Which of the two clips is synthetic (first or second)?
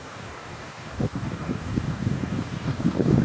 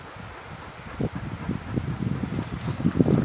first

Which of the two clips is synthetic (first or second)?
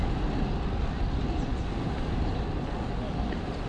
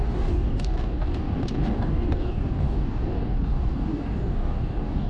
second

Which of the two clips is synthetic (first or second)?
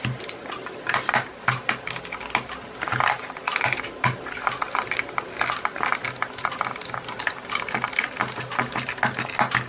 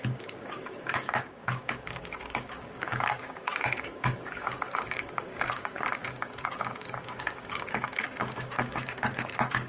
second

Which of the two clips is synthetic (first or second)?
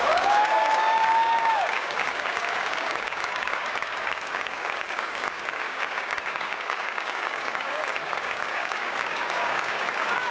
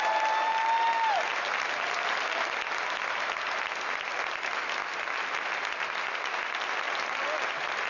first